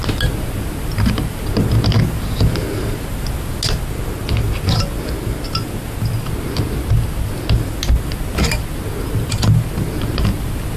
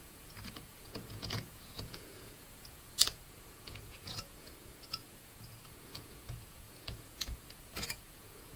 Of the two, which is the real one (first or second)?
first